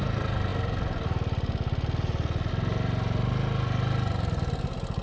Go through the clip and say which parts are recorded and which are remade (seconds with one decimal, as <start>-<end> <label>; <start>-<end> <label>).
0.0-5.0 recorded